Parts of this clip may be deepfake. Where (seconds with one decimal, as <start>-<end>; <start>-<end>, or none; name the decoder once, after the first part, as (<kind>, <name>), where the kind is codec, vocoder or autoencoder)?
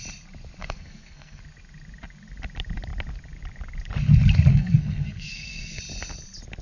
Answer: 0.6-1.4 (codec, SNAC); 4.5-5.8